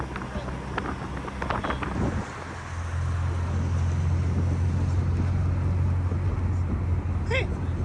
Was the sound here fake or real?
real